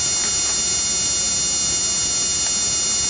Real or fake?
real